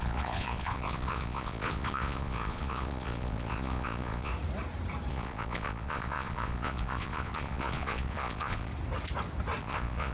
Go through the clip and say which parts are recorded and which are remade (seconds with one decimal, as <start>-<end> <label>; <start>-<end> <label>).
0.0-4.3 remade; 4.3-5.1 recorded; 5.1-8.7 remade; 8.7-9.6 recorded; 9.6-10.1 remade